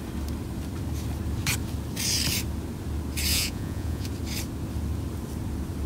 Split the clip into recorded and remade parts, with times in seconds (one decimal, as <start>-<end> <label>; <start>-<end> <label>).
0.0-3.3 recorded; 3.3-4.1 remade; 4.1-5.9 recorded